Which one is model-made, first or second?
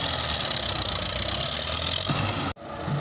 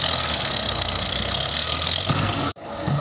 second